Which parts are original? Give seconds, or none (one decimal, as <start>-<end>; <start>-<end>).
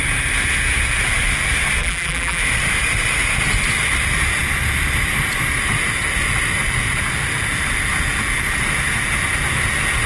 0.0-1.8; 2.4-10.1